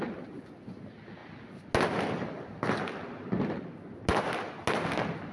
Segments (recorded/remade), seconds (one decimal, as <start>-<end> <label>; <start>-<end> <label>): 0.0-5.3 recorded